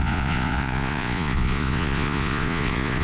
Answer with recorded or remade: remade